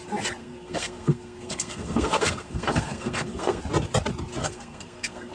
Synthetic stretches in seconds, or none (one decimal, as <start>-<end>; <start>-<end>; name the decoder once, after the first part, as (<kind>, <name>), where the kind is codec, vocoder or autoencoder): 0.4-3.6 (codec, SNAC); 4.4-5.3